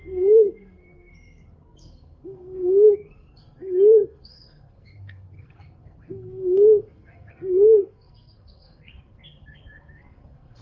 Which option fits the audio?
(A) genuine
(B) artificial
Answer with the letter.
B